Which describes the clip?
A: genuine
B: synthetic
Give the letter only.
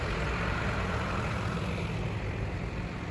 A